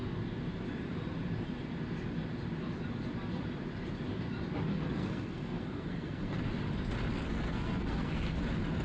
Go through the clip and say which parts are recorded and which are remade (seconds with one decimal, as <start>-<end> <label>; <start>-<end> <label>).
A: 0.0-4.7 recorded; 4.7-6.4 remade; 6.4-7.1 recorded; 7.1-8.4 remade; 8.4-8.8 recorded